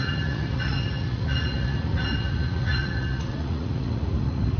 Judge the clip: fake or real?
fake